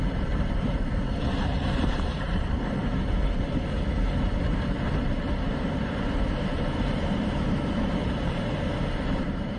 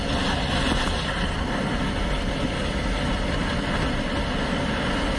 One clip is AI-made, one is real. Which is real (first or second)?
second